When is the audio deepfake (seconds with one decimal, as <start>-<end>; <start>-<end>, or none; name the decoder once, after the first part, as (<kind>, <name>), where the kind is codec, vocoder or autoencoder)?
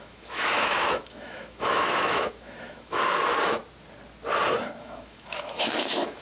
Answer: 0.0-3.6 (autoencoder, DAC-VAE); 4.8-6.2